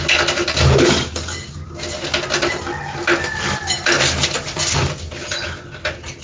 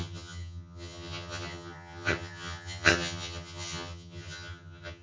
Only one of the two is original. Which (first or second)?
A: first